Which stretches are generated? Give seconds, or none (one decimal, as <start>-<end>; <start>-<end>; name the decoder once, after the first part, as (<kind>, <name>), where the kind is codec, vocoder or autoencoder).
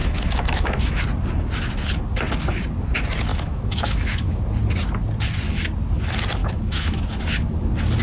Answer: 0.0-1.0 (autoencoder, DAC-VAE); 3.3-4.4; 6.4-7.0